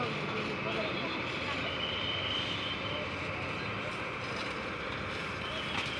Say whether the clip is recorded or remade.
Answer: recorded